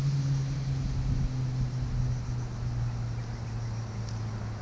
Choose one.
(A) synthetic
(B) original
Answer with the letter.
B